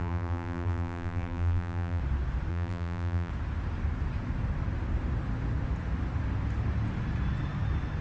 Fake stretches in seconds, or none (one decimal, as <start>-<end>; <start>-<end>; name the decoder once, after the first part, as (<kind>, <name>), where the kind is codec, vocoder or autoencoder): 0.0-2.0 (vocoder, BigVGAN v2); 2.5-3.3